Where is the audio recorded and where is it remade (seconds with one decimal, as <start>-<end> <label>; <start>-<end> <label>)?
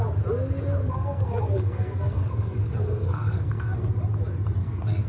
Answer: 0.0-0.8 recorded; 0.8-3.9 remade; 3.9-4.6 recorded; 4.6-5.1 remade